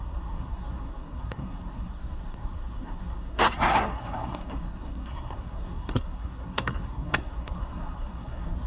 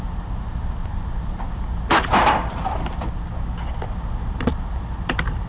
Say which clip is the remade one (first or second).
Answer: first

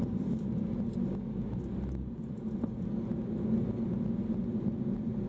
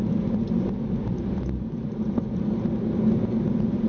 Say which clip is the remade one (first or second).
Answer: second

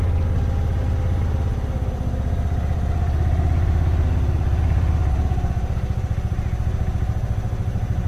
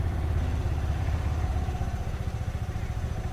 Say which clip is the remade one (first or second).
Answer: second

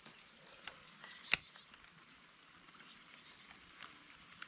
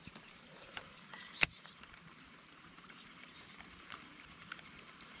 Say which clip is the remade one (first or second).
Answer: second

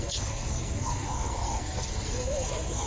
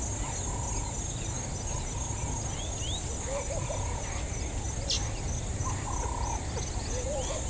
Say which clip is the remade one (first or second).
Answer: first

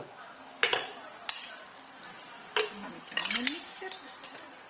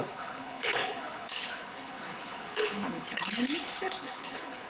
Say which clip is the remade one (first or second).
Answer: second